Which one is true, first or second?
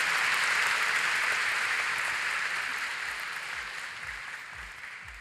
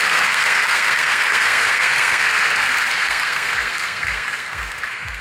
first